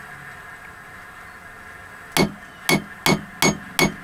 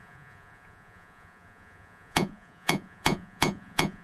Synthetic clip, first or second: second